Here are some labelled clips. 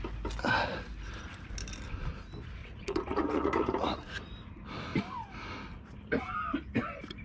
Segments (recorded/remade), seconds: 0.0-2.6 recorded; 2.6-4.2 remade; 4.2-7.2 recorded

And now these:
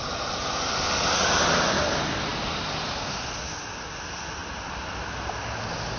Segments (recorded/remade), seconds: 0.0-6.0 recorded

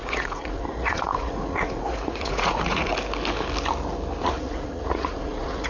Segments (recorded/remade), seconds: 0.0-2.9 remade; 2.9-4.2 recorded; 4.2-5.7 remade

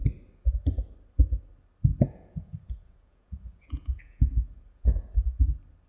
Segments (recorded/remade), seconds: 0.0-1.9 recorded; 1.9-5.4 remade; 5.4-5.9 recorded

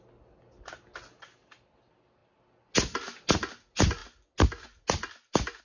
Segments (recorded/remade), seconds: 0.0-5.6 recorded

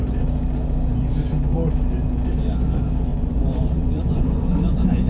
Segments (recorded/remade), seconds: 0.0-3.1 recorded; 3.1-5.1 remade

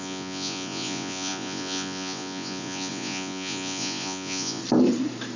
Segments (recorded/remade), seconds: 0.0-4.6 remade; 4.6-5.4 recorded